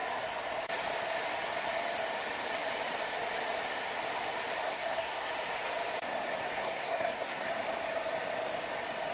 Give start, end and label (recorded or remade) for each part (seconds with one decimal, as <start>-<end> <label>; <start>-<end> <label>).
0.0-4.6 recorded; 4.6-5.3 remade; 5.3-6.4 recorded; 6.4-7.5 remade; 7.5-9.1 recorded